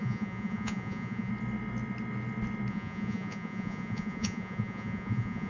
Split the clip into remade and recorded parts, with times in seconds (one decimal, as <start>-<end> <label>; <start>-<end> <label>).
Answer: 0.0-1.3 remade; 1.3-2.7 recorded; 2.7-5.5 remade